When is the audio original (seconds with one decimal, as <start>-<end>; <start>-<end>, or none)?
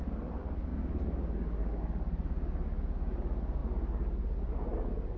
0.0-5.2